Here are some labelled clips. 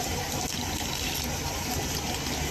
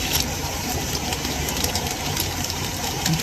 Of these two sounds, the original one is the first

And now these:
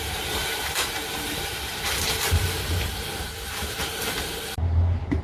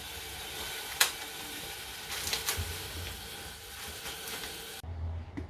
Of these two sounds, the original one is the second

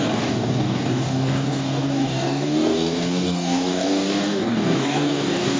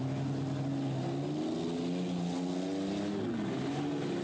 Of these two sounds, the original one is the second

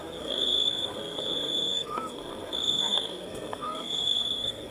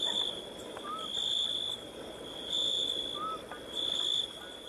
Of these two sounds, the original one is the second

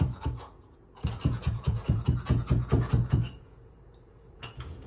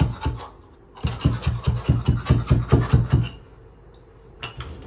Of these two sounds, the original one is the second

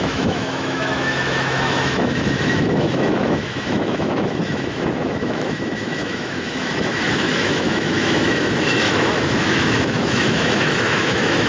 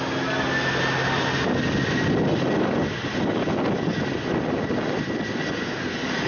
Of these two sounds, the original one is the second